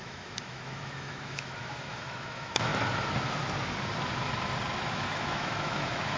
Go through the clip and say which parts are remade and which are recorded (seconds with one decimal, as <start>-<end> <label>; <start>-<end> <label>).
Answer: 0.0-2.7 remade; 2.7-4.9 recorded; 4.9-6.2 remade